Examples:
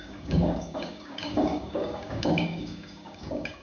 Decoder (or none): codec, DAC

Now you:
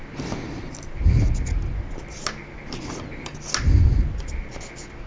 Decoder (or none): none